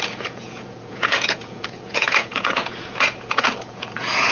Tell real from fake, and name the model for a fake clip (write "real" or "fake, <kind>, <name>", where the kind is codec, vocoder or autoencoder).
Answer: fake, vocoder, Vocos